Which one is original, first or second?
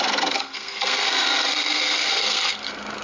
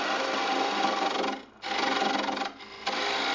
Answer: second